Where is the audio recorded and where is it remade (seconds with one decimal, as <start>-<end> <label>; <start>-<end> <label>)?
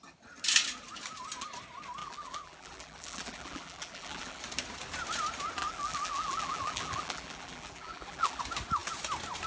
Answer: 0.0-2.0 recorded; 2.0-4.4 remade; 4.4-5.6 recorded; 5.6-8.4 remade; 8.4-9.5 recorded